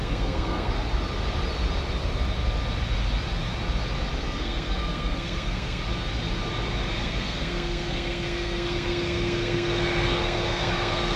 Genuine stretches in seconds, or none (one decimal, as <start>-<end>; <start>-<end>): 0.7-4.1; 5.8-7.0